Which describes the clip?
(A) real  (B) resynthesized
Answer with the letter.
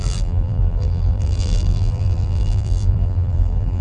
B